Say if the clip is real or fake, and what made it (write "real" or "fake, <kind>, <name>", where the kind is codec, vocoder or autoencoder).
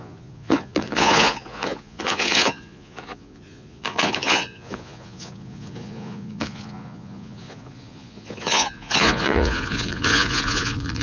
fake, vocoder, Vocos